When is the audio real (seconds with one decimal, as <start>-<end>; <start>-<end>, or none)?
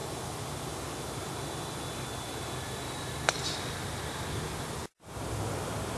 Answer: 0.0-6.0